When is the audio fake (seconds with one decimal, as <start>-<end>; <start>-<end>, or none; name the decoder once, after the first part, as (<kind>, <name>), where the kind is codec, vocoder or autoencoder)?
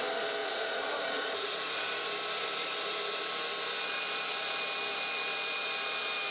0.4-1.8 (vocoder, Vocos)